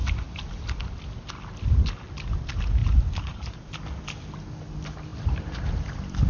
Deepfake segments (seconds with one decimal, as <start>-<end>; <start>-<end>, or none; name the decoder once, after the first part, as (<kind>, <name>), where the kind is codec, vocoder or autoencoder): 2.8-3.7 (vocoder, BigVGAN v2); 5.1-5.7